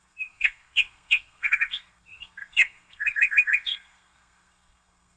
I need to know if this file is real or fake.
fake